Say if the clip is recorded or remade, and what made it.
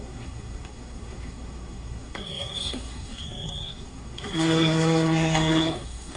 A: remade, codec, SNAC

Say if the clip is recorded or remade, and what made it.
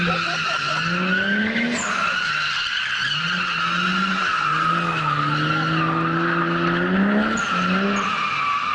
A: recorded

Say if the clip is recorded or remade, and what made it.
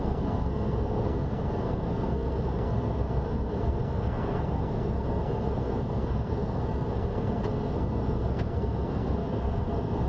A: remade, codec, SNAC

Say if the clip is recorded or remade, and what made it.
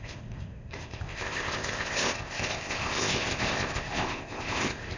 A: remade, codec, ZipCodec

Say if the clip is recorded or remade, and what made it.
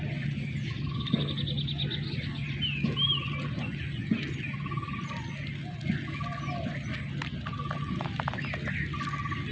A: recorded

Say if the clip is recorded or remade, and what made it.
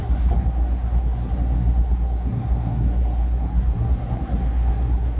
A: remade, codec, SNAC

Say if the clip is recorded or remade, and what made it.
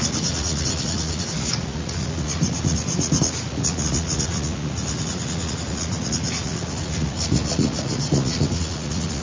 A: remade, vocoder, Vocos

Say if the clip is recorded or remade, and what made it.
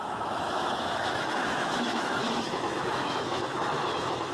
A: remade, autoencoder, DAC-VAE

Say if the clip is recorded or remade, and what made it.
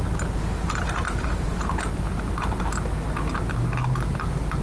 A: recorded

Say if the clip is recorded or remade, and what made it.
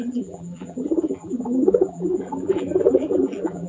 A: remade, vocoder, BigVGAN v2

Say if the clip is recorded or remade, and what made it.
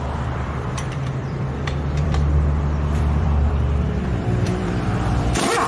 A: remade, vocoder, BigVGAN v2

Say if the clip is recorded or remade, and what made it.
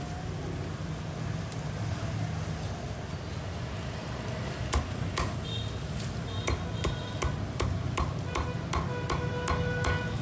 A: recorded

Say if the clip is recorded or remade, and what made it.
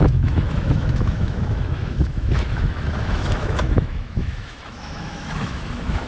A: remade, autoencoder, DAC-VAE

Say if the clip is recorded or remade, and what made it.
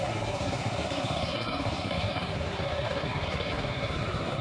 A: remade, codec, SNAC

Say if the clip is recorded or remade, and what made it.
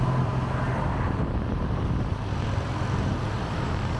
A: recorded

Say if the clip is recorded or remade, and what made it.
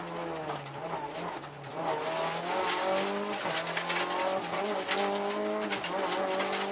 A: recorded